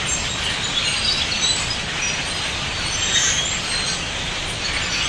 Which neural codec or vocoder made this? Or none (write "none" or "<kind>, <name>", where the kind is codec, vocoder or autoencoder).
vocoder, BigVGAN v2